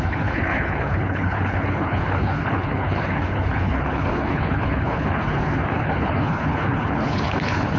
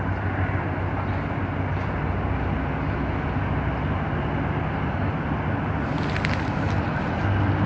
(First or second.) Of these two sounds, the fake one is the first